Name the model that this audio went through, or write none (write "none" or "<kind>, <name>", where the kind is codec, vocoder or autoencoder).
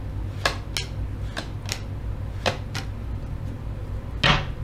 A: none